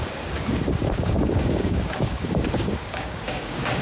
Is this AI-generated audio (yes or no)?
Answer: yes